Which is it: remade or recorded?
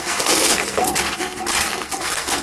remade